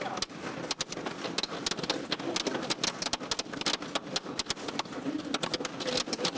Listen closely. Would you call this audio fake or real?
real